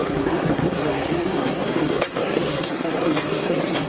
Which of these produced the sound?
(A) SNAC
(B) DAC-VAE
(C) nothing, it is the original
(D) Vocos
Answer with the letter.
A